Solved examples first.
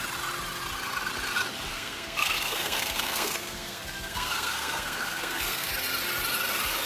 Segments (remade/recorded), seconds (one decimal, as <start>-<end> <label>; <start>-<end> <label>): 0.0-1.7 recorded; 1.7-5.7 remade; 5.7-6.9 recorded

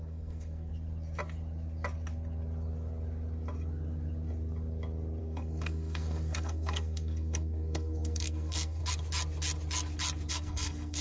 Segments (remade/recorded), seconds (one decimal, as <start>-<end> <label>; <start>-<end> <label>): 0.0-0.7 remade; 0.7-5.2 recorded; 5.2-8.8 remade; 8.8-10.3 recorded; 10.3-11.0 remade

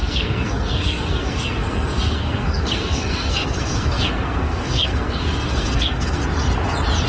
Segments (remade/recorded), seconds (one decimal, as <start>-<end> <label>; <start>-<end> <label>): 0.0-6.2 remade; 6.2-7.1 recorded

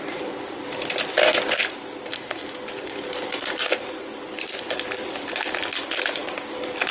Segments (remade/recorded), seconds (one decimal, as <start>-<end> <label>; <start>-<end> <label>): 0.0-6.9 recorded

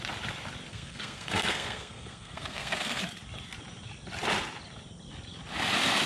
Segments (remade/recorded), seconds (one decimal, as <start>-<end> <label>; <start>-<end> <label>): 0.0-0.7 recorded; 0.7-3.0 remade; 3.0-6.1 recorded

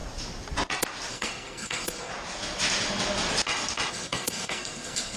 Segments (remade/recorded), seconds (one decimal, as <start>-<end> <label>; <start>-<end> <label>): 0.0-1.1 recorded; 1.1-2.1 remade; 2.1-3.9 recorded; 3.9-5.2 remade

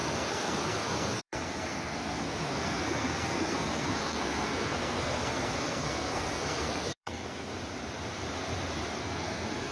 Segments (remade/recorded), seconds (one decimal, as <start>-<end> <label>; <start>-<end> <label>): 0.0-7.5 remade; 7.5-9.0 recorded; 9.0-9.7 remade